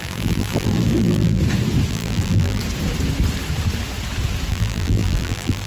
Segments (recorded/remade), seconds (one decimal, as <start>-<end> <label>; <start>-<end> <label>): 0.0-1.4 remade; 1.4-1.9 recorded; 1.9-2.6 remade; 2.6-4.5 recorded; 4.5-5.7 remade